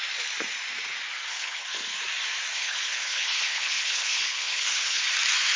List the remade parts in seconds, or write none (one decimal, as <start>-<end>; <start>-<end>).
1.3-1.9; 2.5-5.0